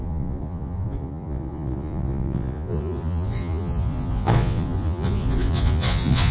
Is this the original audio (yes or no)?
no